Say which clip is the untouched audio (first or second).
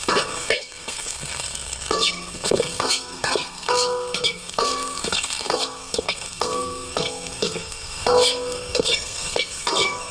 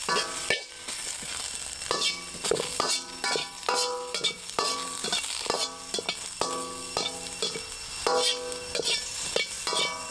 second